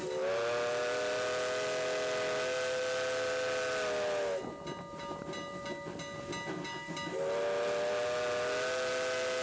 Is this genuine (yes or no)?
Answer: yes